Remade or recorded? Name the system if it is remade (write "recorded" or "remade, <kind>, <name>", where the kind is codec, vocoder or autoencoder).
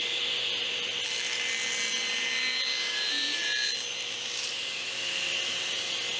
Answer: recorded